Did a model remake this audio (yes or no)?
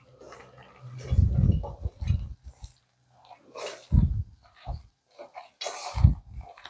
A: no